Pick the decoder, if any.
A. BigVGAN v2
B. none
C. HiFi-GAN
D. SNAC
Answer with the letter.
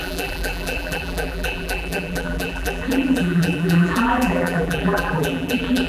A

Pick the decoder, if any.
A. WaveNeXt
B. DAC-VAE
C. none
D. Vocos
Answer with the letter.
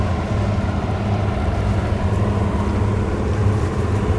C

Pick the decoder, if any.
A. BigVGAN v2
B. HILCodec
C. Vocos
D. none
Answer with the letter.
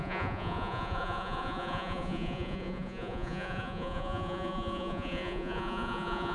C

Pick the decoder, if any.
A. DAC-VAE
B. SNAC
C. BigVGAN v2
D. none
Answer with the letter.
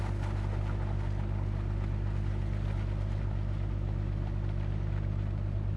D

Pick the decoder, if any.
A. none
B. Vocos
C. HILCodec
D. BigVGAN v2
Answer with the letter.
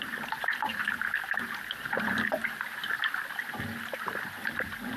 A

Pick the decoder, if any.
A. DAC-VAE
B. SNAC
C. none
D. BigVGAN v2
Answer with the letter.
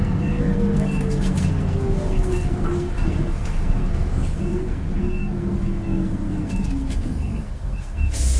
B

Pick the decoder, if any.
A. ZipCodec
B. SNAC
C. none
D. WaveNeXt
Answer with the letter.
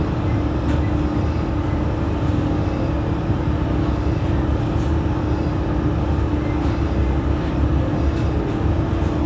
C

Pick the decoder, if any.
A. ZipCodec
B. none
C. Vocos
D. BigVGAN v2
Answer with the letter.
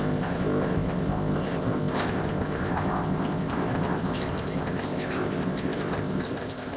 A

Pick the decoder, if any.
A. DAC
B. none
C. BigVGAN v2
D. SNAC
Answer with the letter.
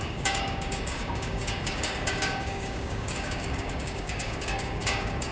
A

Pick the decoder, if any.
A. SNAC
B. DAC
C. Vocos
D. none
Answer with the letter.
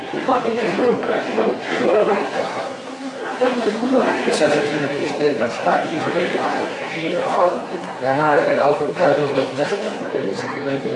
A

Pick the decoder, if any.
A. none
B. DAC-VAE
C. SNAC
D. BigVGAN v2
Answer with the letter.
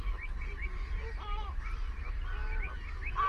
A